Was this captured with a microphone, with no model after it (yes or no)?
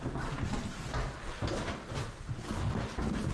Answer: yes